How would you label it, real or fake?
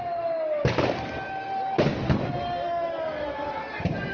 real